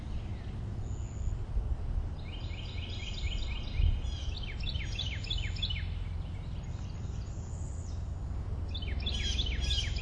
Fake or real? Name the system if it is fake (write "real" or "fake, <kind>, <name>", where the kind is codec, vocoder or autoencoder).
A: real